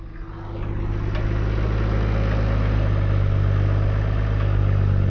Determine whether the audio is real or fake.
real